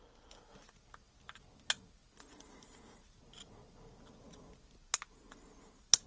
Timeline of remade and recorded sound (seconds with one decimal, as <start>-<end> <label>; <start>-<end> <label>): 0.0-6.1 recorded